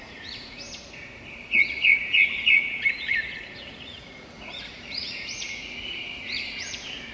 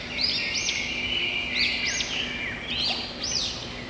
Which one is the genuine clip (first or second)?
second